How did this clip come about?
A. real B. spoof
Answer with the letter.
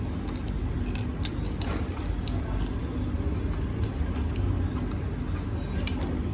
A